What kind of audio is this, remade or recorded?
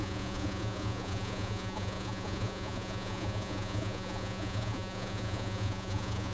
remade